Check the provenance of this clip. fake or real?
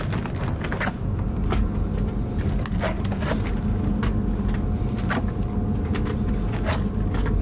real